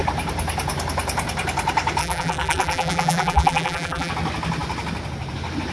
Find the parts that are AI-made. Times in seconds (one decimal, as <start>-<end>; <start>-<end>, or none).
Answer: 2.0-4.1